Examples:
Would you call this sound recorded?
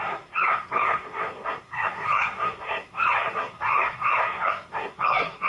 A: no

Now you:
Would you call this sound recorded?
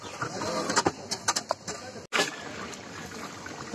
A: yes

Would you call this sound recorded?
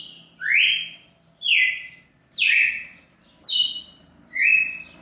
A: yes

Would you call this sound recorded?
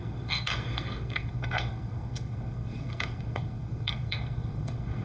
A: no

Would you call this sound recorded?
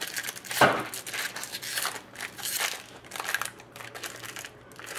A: yes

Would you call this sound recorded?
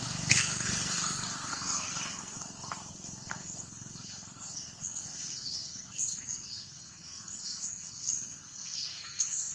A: no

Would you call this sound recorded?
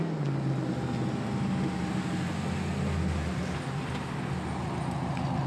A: yes